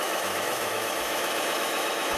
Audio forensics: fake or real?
fake